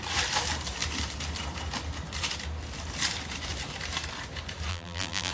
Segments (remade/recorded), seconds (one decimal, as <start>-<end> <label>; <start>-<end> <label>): 0.0-4.7 recorded; 4.7-5.3 remade